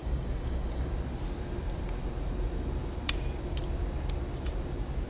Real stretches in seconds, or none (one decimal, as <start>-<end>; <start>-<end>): 0.9-5.1